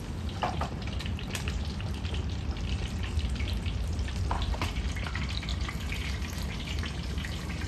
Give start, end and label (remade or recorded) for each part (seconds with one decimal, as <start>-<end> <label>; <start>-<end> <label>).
0.0-7.7 recorded